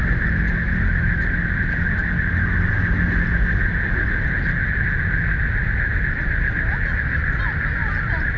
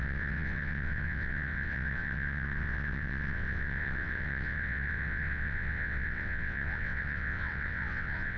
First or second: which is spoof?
second